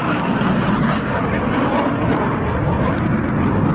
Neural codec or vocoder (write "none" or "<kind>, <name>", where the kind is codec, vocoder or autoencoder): none